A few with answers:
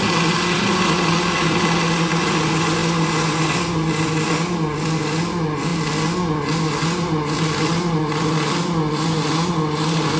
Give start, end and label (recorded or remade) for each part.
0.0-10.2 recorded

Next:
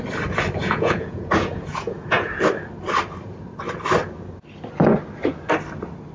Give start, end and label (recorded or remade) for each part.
0.0-0.6 recorded; 0.6-2.5 remade; 2.5-6.1 recorded

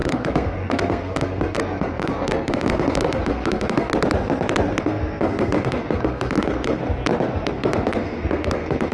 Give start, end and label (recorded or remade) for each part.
0.0-3.9 remade; 3.9-4.8 recorded; 4.8-6.8 remade; 6.8-7.5 recorded; 7.5-8.9 remade

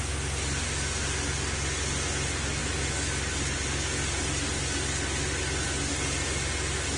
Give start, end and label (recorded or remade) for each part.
0.0-7.0 recorded

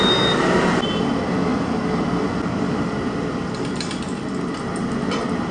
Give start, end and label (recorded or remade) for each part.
0.0-5.5 recorded

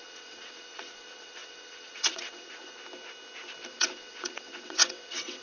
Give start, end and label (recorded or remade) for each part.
0.0-2.8 remade; 2.8-3.7 recorded; 3.7-5.4 remade

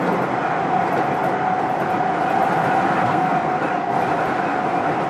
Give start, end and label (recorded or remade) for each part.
0.0-3.0 recorded; 3.0-3.6 remade; 3.6-5.1 recorded

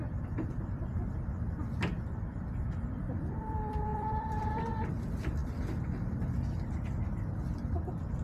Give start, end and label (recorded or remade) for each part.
0.0-0.9 remade; 0.9-2.6 recorded; 2.6-5.4 remade; 5.4-8.2 recorded